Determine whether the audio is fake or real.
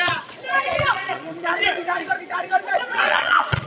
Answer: fake